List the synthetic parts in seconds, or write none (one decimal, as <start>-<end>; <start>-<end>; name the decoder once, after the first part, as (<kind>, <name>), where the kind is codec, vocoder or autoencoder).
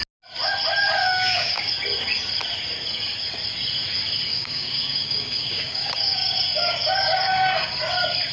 1.0-1.7 (codec, DAC); 4.3-7.7